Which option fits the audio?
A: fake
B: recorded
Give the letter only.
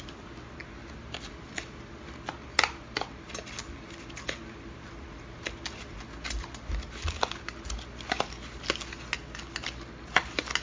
B